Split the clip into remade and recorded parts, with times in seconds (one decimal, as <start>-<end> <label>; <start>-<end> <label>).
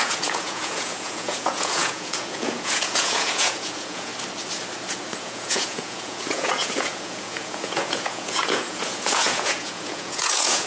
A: 0.0-4.1 remade; 4.1-5.2 recorded; 5.2-10.7 remade